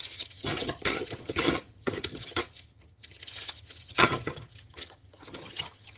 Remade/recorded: remade